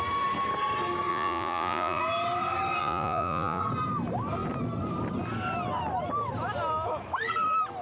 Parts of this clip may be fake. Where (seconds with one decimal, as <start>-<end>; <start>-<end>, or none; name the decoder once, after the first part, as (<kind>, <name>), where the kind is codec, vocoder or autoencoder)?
1.1-2.0 (vocoder, Vocos); 2.8-3.6